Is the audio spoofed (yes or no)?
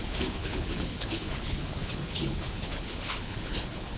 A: yes